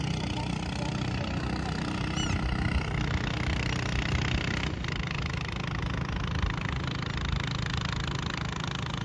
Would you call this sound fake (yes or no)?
no